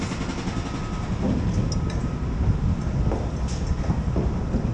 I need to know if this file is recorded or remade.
recorded